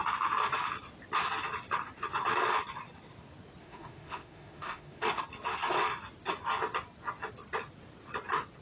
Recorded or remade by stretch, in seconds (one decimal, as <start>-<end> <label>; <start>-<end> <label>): 0.0-3.6 recorded; 3.6-5.2 remade; 5.2-8.6 recorded